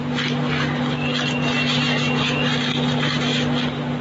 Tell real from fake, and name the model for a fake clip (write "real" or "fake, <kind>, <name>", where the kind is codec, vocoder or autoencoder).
real